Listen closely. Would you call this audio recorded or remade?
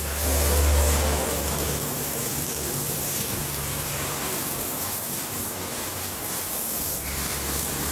remade